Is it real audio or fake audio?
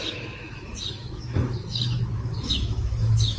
fake